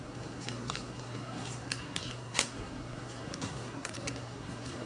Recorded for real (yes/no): no